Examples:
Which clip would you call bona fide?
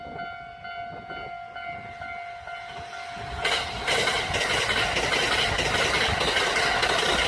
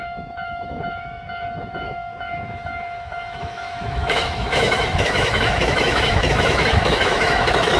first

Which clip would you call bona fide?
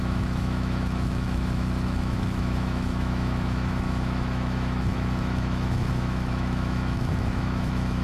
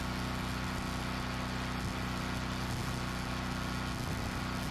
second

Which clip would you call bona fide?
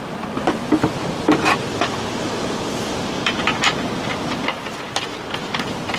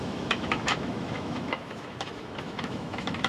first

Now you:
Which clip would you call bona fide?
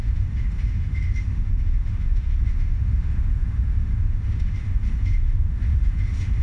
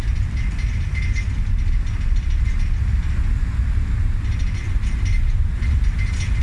second